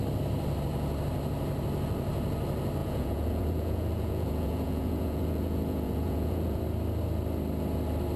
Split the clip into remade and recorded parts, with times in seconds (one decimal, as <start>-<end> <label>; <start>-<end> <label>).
0.0-2.8 recorded; 2.8-6.6 remade; 6.6-8.2 recorded